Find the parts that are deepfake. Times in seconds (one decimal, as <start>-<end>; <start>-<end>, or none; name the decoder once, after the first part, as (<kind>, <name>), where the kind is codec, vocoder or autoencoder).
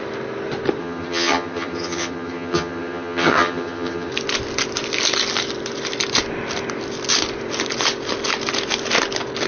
0.8-4.1 (vocoder, HiFi-GAN)